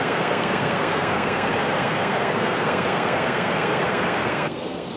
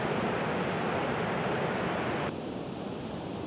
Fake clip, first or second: first